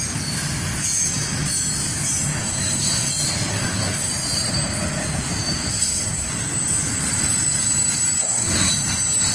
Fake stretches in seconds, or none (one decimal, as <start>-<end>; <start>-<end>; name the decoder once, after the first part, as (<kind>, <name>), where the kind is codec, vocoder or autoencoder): 2.4-3.1 (codec, SNAC); 3.5-4.1; 5.7-6.3; 8.2-8.7